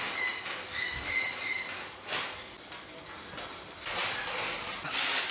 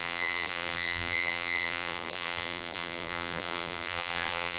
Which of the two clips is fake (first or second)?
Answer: second